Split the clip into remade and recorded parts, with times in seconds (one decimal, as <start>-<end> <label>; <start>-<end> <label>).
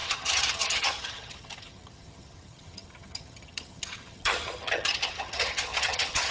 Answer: 0.0-6.3 remade